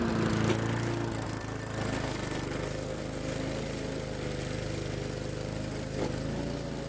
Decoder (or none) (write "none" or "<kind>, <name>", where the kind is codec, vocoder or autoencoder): none